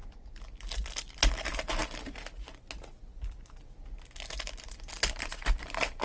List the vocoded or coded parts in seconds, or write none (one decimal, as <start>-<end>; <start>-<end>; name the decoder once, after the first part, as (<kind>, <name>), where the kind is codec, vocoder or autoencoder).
none